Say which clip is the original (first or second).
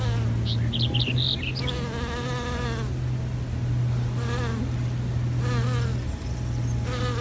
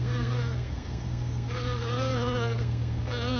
first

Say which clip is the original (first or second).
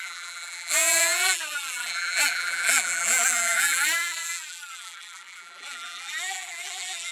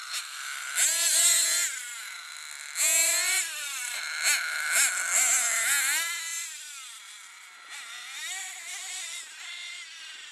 second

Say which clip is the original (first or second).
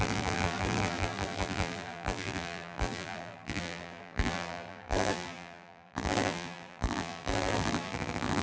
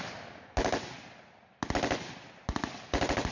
second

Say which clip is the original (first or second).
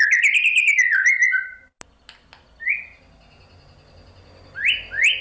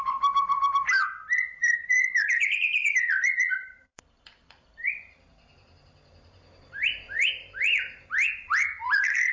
first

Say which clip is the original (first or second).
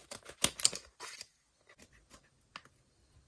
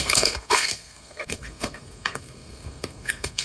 first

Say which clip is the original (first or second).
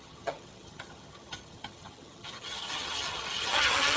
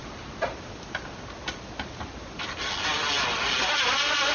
second